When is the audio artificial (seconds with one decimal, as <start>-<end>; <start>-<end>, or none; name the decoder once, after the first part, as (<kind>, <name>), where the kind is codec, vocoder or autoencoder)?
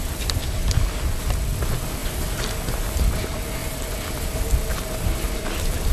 none